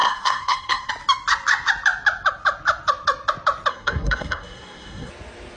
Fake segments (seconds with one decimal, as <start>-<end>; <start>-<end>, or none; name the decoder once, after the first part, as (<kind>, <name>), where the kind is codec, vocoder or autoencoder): 0.0-0.9 (codec, SNAC); 3.7-5.1